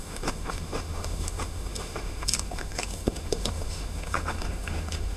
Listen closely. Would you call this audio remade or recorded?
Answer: remade